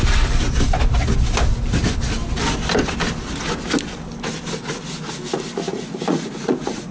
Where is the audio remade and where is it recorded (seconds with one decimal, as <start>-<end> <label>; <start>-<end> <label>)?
0.0-5.7 recorded; 5.7-6.9 remade